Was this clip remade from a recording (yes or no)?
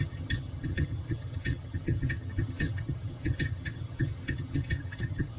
yes